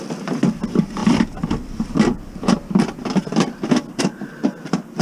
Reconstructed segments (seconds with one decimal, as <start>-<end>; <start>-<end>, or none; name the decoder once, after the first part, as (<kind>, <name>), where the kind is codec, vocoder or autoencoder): none